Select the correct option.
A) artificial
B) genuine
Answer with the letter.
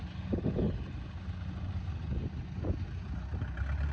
B